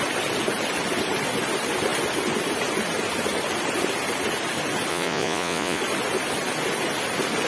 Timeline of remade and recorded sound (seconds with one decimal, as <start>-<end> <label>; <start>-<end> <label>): 0.0-4.9 recorded; 4.9-5.8 remade; 5.8-7.5 recorded